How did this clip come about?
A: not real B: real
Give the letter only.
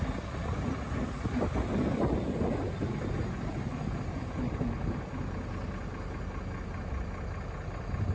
B